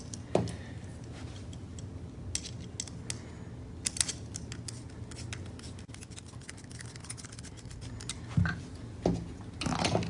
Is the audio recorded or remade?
recorded